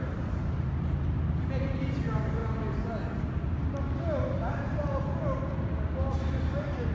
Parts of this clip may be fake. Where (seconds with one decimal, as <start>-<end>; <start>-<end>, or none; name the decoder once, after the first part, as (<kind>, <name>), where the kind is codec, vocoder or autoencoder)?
none